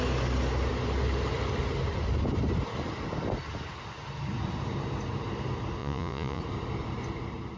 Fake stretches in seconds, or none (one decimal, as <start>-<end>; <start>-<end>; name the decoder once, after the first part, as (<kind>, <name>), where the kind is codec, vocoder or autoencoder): 5.8-6.4 (vocoder, Vocos)